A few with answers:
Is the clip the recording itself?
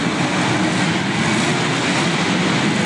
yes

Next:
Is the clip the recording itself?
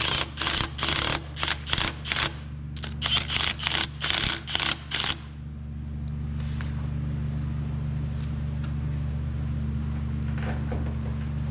yes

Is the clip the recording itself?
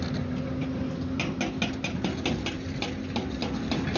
yes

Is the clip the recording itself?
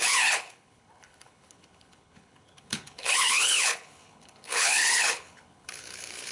no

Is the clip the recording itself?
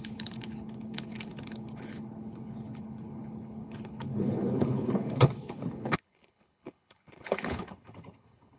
no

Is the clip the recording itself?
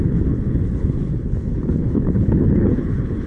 no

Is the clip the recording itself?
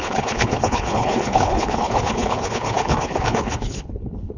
no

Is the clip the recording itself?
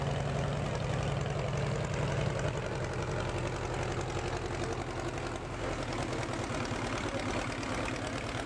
yes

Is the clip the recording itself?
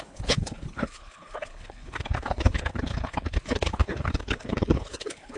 no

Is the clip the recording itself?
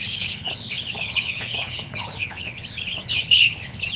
no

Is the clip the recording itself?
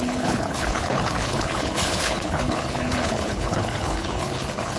no